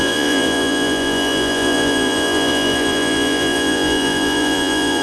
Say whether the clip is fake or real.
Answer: fake